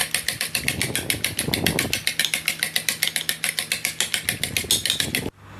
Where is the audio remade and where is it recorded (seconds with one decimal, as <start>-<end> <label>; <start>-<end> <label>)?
0.0-5.6 recorded